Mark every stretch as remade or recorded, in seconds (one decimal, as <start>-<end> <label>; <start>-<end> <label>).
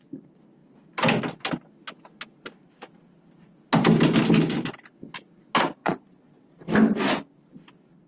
0.0-5.8 recorded; 5.8-6.5 remade; 6.5-8.1 recorded